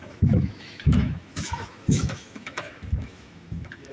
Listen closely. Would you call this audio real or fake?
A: fake